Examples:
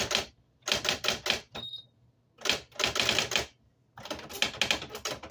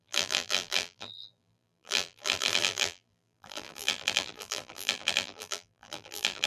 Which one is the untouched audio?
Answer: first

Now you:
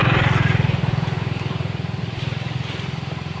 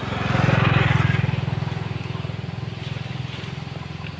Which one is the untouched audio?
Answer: second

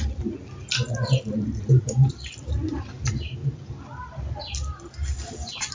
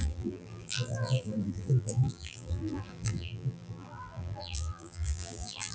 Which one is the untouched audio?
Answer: first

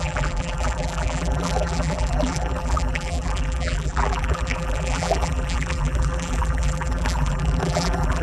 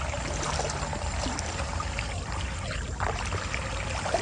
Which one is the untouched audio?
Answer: second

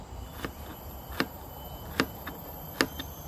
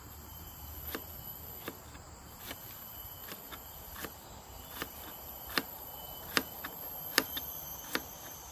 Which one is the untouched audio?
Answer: first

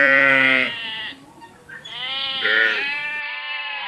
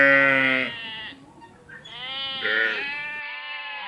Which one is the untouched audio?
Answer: second